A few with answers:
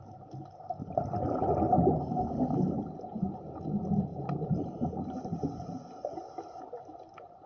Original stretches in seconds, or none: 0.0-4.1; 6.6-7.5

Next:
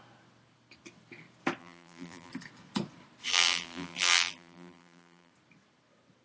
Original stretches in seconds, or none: 0.0-1.6; 2.3-3.3; 5.3-6.2